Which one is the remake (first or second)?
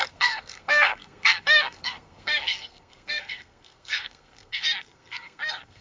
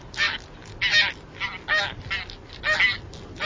first